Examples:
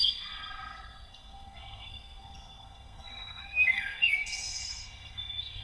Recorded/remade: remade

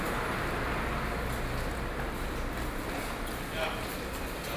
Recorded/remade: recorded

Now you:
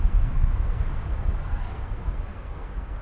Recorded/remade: remade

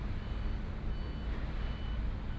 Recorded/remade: recorded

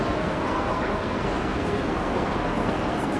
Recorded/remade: remade